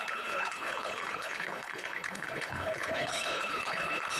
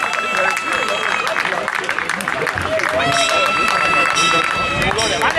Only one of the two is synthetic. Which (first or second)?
first